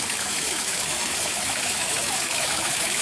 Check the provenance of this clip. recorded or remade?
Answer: remade